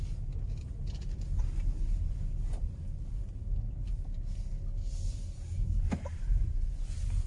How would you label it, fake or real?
real